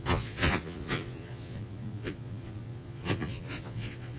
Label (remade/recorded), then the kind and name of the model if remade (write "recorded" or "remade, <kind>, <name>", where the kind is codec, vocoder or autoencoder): remade, vocoder, Vocos